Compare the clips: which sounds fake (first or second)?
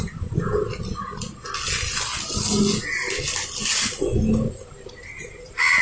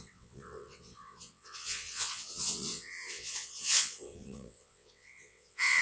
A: second